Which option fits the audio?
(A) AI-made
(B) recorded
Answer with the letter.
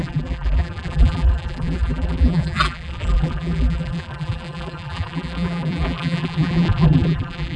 A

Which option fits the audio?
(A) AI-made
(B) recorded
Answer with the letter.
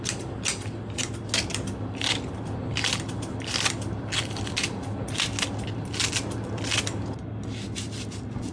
B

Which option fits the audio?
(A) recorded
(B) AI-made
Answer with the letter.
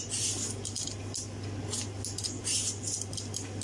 A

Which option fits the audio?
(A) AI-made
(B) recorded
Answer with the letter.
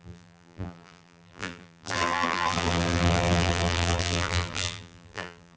A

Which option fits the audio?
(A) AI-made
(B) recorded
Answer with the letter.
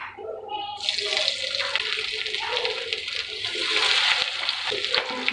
B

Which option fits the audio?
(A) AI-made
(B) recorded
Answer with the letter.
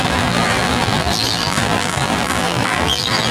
A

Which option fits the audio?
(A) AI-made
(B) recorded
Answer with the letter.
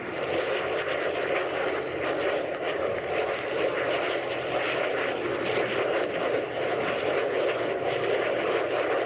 B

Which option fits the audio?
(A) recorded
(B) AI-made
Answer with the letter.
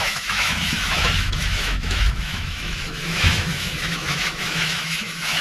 B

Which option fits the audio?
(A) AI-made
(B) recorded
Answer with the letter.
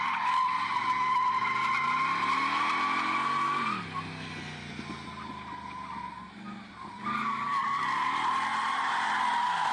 B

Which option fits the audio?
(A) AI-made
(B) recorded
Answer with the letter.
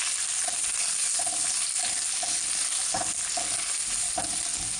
B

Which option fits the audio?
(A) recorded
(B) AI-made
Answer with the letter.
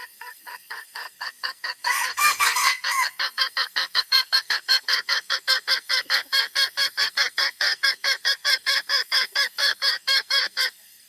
B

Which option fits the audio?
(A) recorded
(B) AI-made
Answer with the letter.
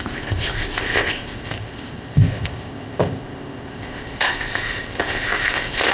B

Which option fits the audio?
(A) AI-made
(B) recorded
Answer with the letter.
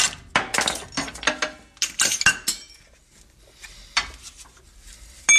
B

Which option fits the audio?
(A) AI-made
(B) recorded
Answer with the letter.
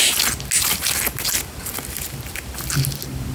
B